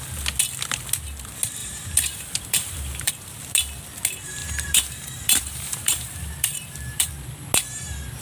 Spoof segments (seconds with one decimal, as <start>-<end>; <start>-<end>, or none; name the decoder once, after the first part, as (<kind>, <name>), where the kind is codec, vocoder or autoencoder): 1.6-3.1 (vocoder, BigVGAN v2); 4.4-7.1